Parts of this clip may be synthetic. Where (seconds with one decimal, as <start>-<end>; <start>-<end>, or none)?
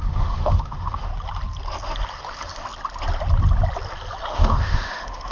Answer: 0.0-1.1; 4.3-5.3